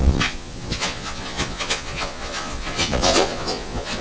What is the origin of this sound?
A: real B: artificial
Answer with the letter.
B